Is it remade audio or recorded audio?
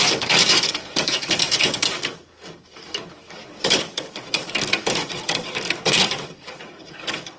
remade